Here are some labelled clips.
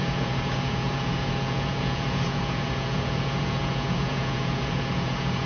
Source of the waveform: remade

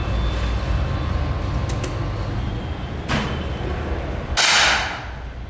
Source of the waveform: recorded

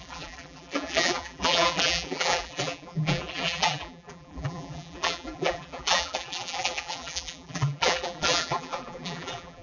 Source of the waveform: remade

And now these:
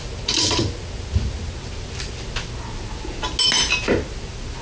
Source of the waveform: recorded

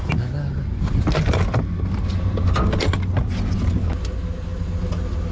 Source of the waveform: recorded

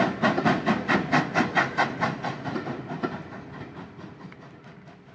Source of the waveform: recorded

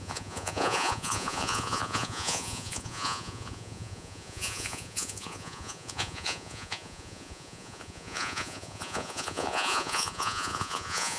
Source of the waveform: remade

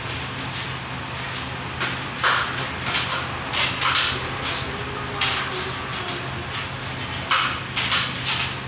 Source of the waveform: recorded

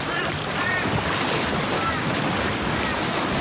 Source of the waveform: recorded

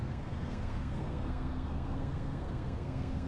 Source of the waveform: remade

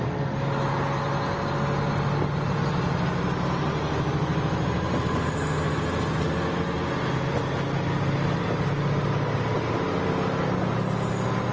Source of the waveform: recorded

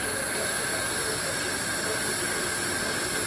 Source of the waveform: recorded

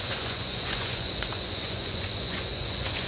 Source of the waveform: remade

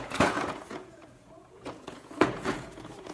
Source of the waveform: remade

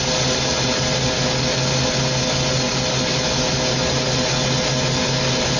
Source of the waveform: recorded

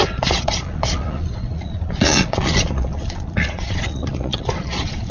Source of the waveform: remade